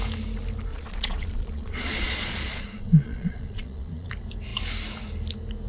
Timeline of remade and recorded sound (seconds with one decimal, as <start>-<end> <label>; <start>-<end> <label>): 0.0-0.7 recorded; 0.7-4.1 remade; 4.1-5.7 recorded